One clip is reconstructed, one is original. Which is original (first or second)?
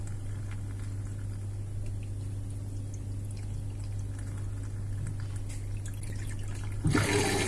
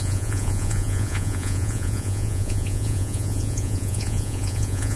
first